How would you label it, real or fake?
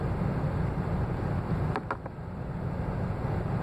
fake